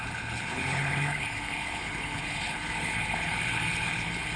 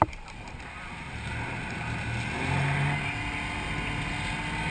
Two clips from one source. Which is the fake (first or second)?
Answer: first